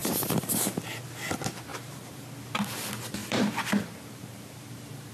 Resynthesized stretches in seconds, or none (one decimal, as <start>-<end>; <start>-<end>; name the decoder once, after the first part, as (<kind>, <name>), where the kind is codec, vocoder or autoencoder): 0.0-0.8 (vocoder, BigVGAN v2); 1.7-2.3; 3.2-5.1